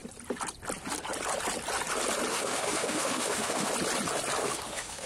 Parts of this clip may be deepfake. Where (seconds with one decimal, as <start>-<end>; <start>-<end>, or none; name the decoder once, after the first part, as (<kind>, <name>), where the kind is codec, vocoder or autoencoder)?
2.3-3.7 (autoencoder, DAC-VAE); 4.4-5.1